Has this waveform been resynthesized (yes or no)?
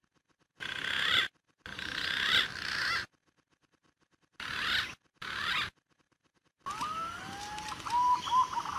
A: no